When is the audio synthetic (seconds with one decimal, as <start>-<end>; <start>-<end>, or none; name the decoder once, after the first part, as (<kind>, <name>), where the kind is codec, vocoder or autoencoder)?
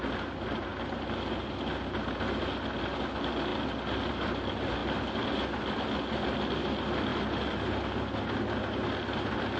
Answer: 7.1-7.8 (vocoder, BigVGAN v2)